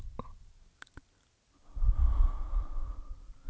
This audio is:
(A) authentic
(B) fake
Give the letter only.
A